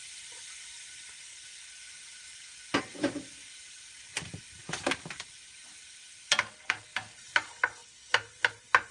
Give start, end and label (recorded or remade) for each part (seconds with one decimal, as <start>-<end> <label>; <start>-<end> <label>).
0.0-8.9 recorded